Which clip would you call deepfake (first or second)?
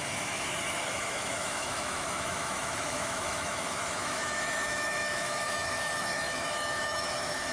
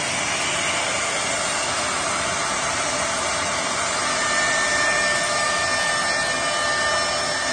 first